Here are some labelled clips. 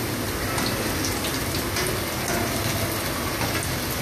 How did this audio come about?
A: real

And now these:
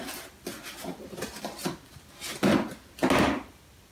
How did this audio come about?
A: real